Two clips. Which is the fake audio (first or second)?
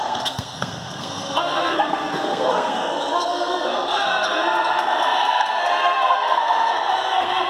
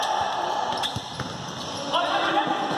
first